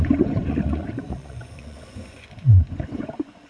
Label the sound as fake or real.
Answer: fake